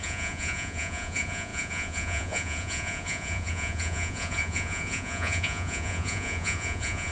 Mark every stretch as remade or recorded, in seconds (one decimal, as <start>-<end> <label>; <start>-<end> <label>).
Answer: 0.0-7.1 remade